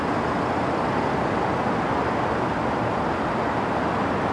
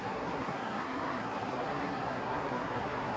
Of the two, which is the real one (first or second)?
first